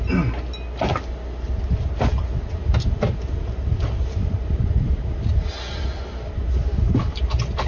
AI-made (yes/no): no